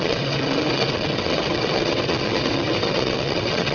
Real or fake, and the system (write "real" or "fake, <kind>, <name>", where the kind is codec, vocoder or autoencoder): fake, vocoder, WaveNeXt